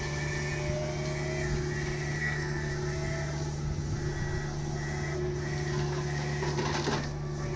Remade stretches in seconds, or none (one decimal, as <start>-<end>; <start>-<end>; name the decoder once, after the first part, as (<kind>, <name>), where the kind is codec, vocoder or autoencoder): 2.2-2.7 (codec, SNAC)